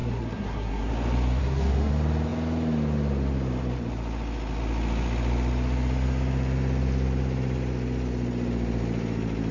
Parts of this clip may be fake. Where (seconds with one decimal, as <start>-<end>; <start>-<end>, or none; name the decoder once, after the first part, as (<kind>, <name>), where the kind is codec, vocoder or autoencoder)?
0.0-0.9 (codec, SNAC); 1.4-1.9